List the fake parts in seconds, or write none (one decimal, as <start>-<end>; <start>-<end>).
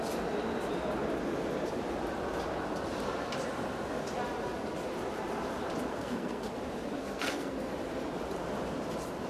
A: 5.9-6.5; 7.0-7.7